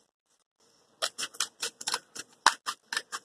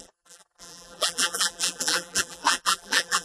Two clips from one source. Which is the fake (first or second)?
second